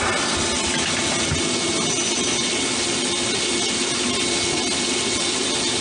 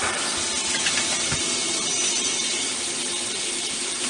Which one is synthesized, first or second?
second